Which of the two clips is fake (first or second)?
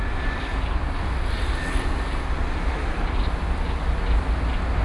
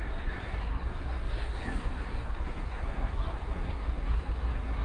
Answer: second